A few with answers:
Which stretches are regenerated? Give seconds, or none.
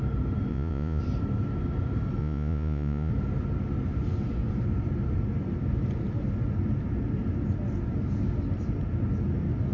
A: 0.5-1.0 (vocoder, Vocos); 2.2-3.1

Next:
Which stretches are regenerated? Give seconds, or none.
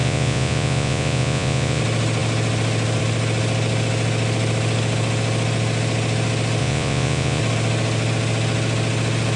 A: 0.0-1.8 (vocoder, Vocos); 6.6-7.4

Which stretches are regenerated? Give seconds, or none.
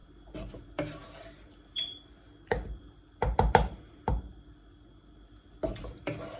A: none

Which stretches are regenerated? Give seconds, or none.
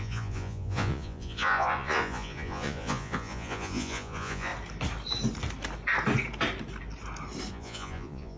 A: 0.0-4.5 (vocoder, Vocos); 7.5-8.4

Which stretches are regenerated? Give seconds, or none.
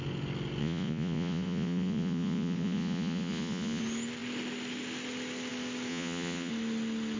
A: 0.6-3.8 (vocoder, Vocos); 5.9-6.5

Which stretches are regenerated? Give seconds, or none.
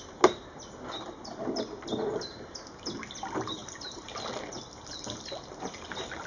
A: none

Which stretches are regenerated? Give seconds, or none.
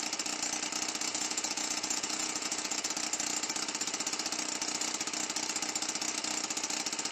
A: 1.1-2.9 (vocoder, Vocos)